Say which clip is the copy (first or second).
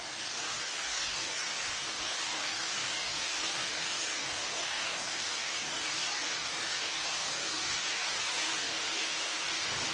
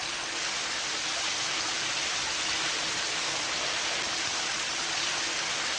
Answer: first